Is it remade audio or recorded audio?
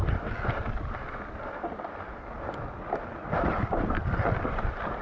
recorded